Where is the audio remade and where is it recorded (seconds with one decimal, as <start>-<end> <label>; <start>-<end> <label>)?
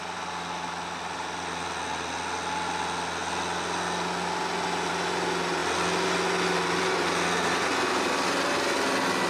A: 0.0-9.3 recorded